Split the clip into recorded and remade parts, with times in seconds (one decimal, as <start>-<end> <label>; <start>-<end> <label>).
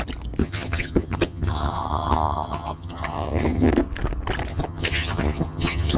0.0-0.4 recorded; 0.4-3.7 remade; 3.7-4.5 recorded; 4.5-6.0 remade